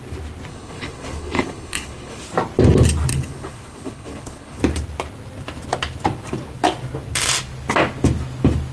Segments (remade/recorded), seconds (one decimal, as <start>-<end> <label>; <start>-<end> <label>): 0.0-0.5 recorded; 0.5-2.2 remade; 2.2-3.1 recorded; 3.1-4.6 remade; 4.6-8.7 recorded